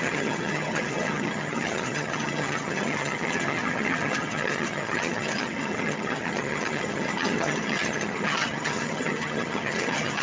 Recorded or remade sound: remade